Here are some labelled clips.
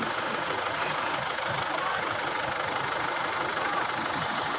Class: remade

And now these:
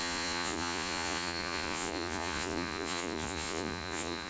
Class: remade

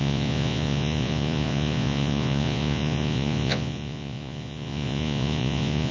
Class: remade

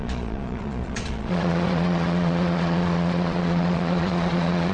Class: remade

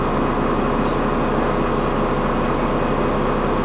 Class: recorded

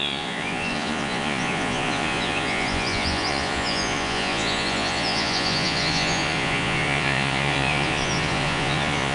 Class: remade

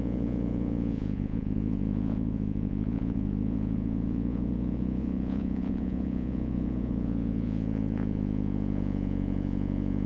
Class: remade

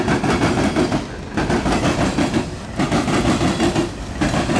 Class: recorded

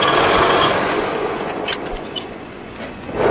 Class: remade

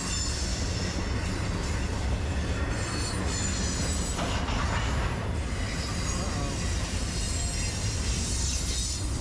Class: recorded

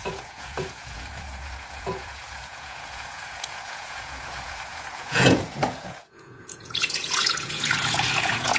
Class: remade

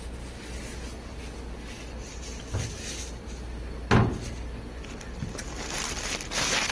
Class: recorded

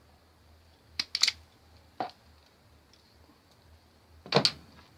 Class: recorded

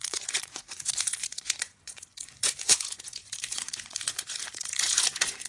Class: remade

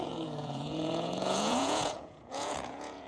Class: remade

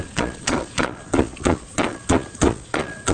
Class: remade